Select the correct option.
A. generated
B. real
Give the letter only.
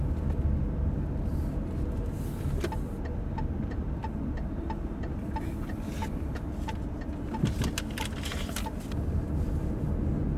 B